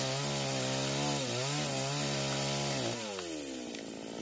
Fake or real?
real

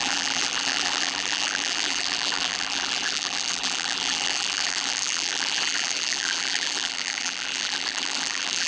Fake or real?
fake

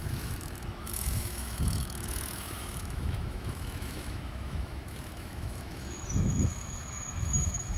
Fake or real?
fake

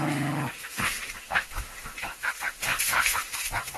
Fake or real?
fake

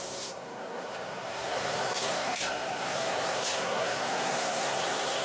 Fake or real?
fake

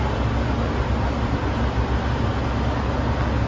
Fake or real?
real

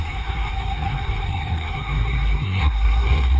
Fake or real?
fake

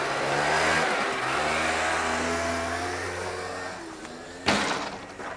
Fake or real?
real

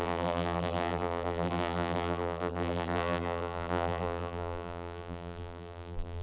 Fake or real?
fake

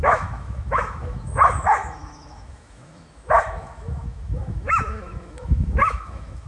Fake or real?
fake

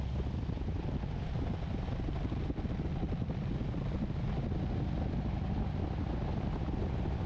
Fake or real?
real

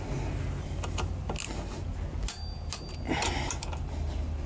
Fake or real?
real